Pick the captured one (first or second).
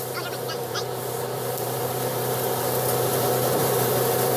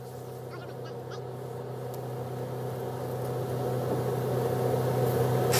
second